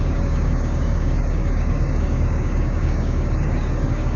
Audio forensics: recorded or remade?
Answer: remade